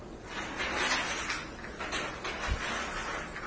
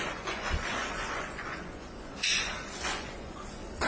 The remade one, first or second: second